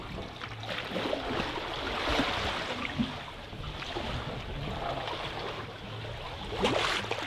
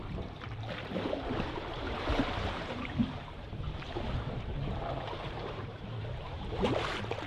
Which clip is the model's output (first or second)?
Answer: second